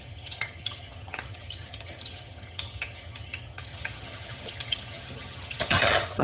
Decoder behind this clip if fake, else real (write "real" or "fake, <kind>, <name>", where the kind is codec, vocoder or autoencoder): fake, vocoder, HiFi-GAN